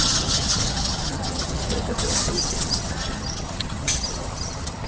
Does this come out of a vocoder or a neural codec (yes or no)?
yes